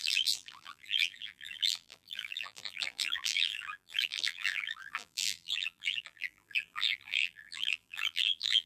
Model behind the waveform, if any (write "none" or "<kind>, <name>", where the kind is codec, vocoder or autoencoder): vocoder, BigVGAN v2